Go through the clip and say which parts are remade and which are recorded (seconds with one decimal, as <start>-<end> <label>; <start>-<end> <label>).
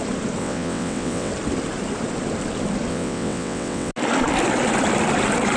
0.0-0.4 recorded; 0.4-1.3 remade; 1.3-2.9 recorded; 2.9-3.9 remade; 3.9-5.6 recorded